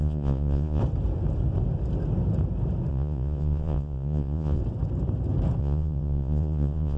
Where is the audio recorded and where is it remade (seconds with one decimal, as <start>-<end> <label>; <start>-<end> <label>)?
0.0-0.8 remade; 0.8-2.9 recorded; 2.9-4.6 remade; 4.6-5.6 recorded; 5.6-7.0 remade